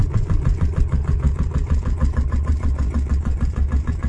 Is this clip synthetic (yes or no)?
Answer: yes